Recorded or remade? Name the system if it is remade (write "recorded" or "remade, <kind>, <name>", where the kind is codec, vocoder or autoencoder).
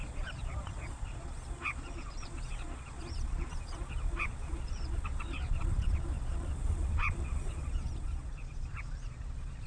remade, vocoder, Vocos